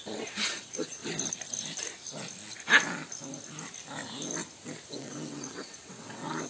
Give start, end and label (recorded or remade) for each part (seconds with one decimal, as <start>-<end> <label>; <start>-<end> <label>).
0.0-1.0 remade; 1.0-4.9 recorded; 4.9-6.5 remade